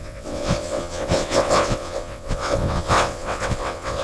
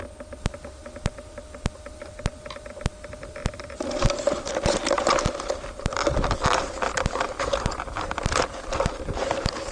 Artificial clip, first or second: first